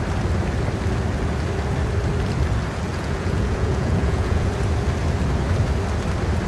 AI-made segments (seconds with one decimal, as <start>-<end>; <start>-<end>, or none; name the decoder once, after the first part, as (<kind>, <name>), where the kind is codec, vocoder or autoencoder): 2.9-4.5 (vocoder, Vocos)